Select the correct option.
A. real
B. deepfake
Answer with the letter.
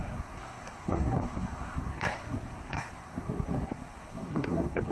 B